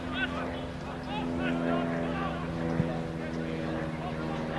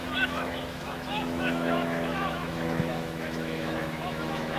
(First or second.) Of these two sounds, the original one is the first